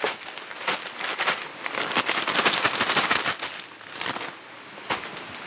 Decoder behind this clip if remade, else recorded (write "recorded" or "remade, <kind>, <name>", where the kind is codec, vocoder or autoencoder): recorded